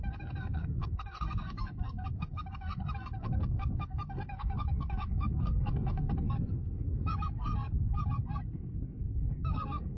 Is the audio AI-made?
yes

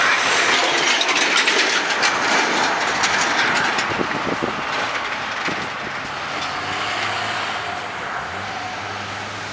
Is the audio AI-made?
no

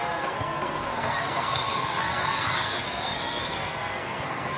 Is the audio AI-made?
yes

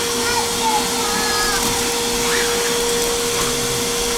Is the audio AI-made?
no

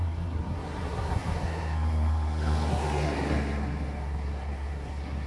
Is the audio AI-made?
yes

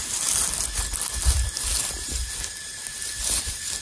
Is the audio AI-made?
no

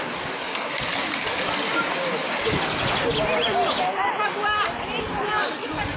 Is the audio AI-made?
no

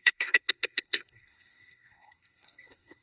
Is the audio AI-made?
yes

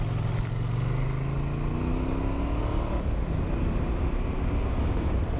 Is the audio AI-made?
no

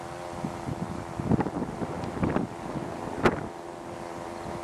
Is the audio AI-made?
no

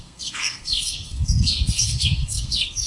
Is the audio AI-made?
yes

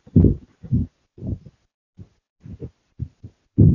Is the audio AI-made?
no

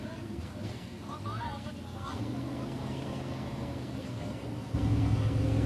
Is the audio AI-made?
yes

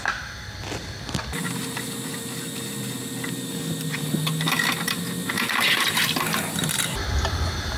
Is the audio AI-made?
no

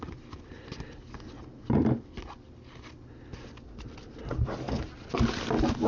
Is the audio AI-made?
no